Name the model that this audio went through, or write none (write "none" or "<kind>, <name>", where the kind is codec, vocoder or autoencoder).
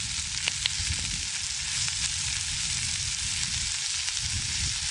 none